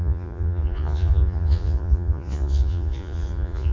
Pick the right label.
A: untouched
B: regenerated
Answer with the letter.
B